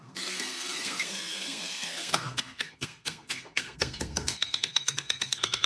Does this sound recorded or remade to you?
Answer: remade